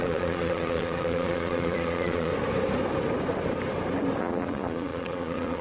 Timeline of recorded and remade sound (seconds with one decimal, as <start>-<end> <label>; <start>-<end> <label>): 0.0-2.3 remade; 2.3-4.2 recorded; 4.2-5.6 remade